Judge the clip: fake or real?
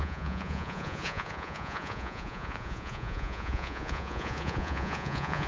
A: fake